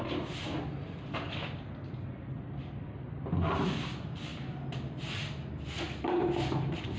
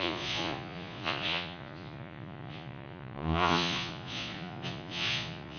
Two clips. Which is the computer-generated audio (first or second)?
second